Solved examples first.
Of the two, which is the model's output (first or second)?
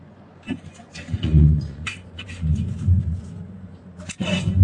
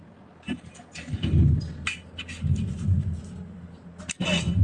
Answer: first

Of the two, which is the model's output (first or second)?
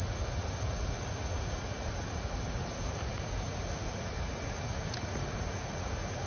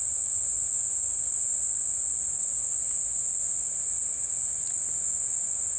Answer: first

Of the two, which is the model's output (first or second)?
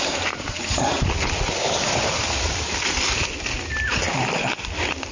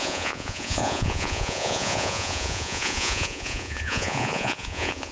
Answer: second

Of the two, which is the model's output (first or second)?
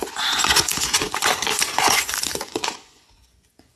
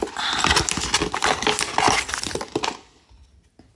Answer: first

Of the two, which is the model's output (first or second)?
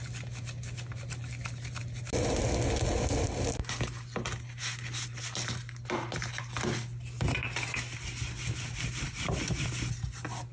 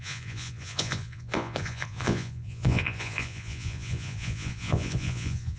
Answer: second